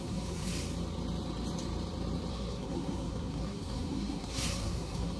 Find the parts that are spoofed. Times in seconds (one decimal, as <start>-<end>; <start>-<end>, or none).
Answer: 0.0-0.5; 2.3-5.2